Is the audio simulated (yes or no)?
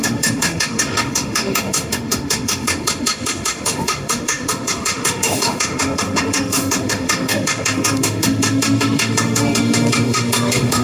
yes